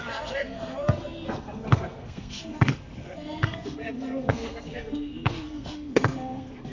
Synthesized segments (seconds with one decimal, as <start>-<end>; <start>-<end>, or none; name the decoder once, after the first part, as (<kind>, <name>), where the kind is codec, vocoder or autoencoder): 0.0-6.7 (codec, SNAC)